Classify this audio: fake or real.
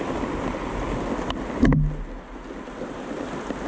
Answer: real